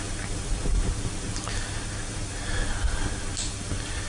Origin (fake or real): real